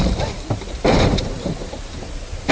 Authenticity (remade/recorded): recorded